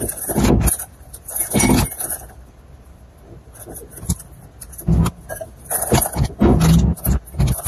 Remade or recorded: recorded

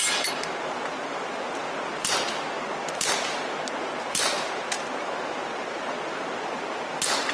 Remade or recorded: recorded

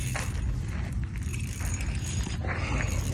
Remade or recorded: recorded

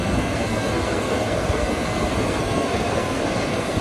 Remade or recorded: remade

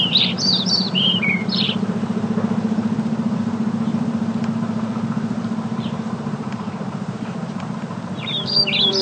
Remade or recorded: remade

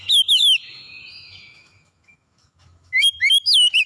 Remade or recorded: remade